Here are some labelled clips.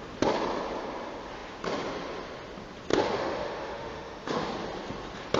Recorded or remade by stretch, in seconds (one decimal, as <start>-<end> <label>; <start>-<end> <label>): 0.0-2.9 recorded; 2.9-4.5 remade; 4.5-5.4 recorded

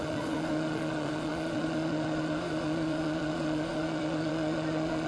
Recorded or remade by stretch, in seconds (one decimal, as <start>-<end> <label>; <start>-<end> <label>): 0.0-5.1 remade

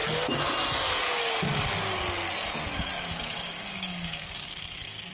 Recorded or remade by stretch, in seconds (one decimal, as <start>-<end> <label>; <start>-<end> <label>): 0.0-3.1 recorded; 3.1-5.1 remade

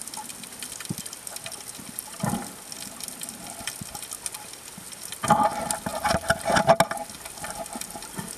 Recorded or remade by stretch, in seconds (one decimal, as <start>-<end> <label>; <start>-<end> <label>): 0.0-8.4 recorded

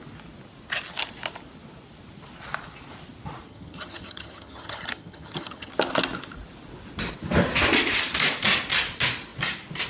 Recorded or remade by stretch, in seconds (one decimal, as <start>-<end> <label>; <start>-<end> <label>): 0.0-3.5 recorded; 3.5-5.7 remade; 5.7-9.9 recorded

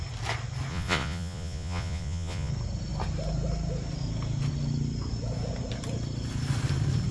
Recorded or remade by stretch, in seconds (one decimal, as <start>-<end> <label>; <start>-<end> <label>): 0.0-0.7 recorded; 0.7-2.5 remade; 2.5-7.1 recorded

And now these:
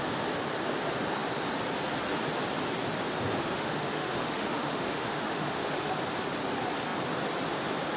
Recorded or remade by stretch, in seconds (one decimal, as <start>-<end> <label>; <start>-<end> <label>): 0.0-3.4 recorded; 3.4-5.9 remade; 5.9-8.0 recorded

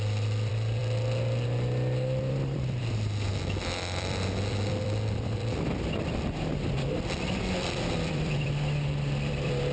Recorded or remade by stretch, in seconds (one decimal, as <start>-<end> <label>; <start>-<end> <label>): 0.0-0.8 remade; 0.8-2.2 recorded; 2.2-9.7 remade